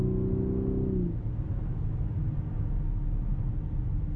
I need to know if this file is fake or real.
real